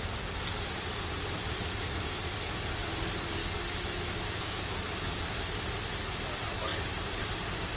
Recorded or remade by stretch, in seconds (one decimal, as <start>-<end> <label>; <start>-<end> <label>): 0.0-3.4 recorded; 3.4-4.6 remade; 4.6-7.8 recorded